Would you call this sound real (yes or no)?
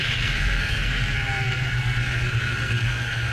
no